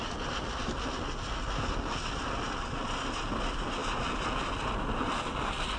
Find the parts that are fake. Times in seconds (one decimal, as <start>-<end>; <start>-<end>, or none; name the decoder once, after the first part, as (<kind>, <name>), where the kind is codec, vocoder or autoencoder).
none